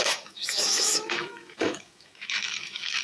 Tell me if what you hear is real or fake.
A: fake